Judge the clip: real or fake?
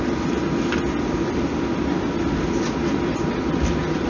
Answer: real